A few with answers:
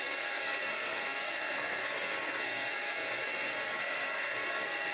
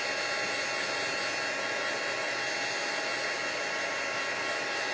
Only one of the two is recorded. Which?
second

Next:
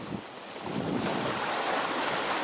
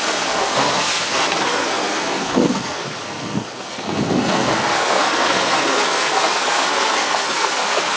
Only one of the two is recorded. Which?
first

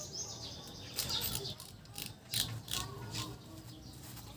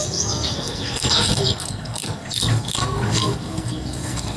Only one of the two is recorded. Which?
first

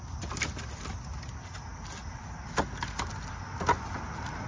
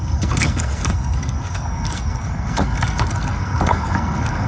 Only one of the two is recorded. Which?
first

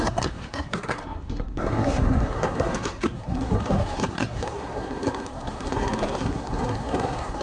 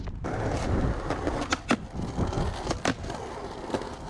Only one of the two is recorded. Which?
second